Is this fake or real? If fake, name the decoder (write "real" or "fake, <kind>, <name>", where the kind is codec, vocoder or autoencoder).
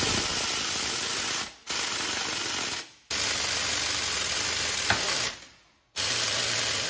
real